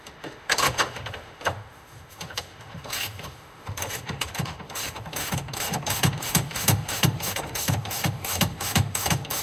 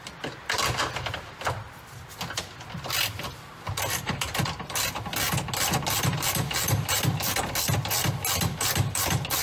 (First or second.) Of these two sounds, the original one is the second